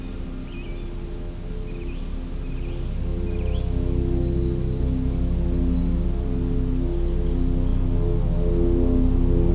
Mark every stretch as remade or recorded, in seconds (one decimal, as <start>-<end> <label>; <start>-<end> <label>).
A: 0.0-9.5 recorded